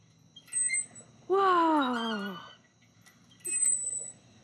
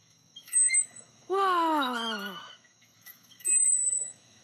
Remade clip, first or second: second